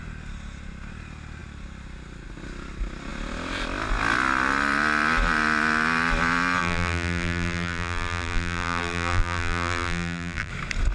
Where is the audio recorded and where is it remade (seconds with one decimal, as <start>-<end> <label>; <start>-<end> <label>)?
0.0-6.6 recorded; 6.6-10.5 remade; 10.5-10.9 recorded